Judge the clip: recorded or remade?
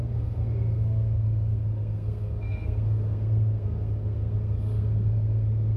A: remade